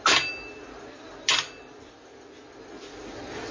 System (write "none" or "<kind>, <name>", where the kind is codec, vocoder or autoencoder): none